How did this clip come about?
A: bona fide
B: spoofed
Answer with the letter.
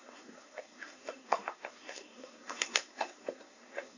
B